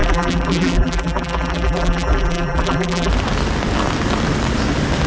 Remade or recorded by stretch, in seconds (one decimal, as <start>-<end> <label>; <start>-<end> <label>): 0.0-3.1 remade; 3.1-5.1 recorded